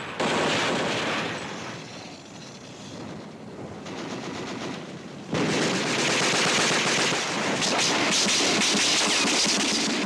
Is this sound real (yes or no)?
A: yes